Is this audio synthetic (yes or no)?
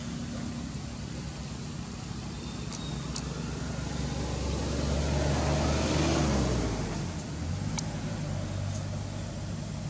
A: no